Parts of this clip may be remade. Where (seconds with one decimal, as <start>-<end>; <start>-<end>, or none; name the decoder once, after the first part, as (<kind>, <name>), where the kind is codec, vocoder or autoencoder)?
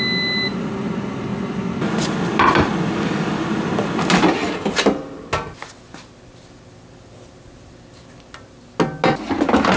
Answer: none